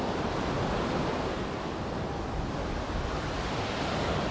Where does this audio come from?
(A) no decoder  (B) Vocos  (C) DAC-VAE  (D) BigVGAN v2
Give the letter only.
D